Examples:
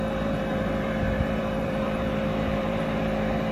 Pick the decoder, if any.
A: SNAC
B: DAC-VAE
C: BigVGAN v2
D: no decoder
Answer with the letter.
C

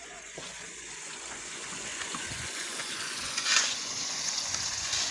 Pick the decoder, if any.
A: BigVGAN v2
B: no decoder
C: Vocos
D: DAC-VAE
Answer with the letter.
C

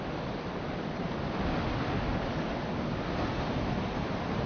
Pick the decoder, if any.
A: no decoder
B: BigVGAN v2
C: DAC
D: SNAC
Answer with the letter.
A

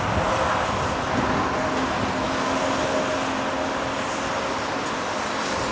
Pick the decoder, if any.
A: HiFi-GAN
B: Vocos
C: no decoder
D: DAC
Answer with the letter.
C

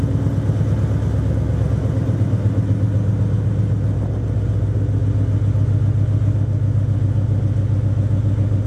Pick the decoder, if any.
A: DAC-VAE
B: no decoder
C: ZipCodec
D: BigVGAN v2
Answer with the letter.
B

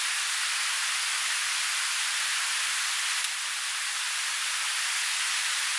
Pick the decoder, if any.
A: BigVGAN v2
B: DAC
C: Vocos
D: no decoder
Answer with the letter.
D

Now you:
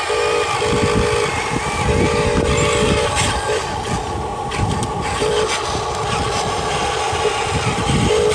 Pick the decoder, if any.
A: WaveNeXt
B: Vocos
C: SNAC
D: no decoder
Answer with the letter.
D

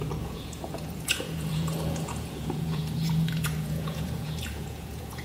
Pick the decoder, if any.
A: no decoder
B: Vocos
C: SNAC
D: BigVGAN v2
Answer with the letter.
B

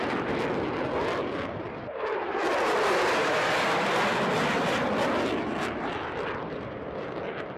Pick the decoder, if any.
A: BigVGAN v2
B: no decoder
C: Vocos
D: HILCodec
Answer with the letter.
A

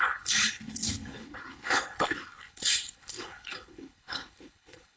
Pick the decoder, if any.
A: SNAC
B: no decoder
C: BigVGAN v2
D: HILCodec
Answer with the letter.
D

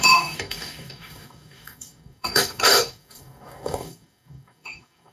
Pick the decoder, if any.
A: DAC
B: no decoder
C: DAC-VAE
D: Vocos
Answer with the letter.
A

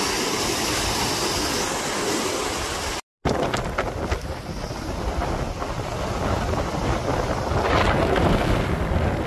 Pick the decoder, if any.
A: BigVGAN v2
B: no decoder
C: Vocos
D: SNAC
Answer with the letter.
B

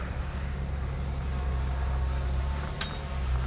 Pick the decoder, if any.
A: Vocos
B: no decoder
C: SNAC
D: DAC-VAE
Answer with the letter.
B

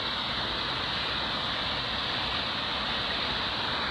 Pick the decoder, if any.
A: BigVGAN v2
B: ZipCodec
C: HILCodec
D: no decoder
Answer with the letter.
D